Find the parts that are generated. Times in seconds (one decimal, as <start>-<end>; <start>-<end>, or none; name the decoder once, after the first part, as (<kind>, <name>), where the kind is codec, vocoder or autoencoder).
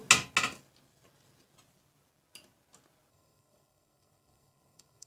3.1-5.1 (codec, SNAC)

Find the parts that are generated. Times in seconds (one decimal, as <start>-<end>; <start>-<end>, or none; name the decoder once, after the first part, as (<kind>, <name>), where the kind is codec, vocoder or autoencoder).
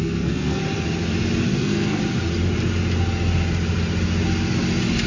0.0-0.6 (codec, SNAC); 1.5-2.0